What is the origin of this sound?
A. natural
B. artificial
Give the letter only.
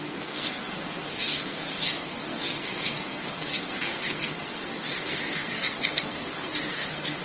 B